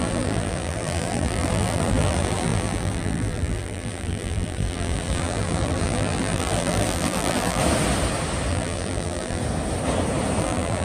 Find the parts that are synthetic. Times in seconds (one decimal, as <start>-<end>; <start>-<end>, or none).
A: 0.0-7.6; 8.5-9.4; 10.4-10.8